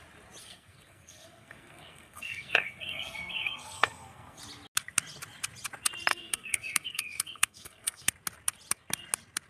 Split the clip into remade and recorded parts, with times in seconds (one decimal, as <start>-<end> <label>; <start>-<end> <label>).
0.0-0.4 recorded; 0.4-4.4 remade; 4.4-6.1 recorded; 6.1-8.1 remade; 8.1-9.5 recorded